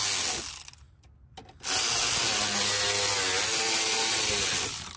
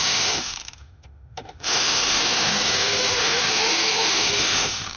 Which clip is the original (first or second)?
first